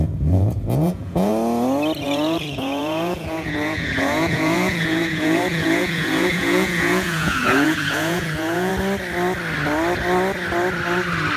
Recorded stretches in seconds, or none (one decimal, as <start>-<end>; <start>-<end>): 1.3-2.0; 8.7-11.4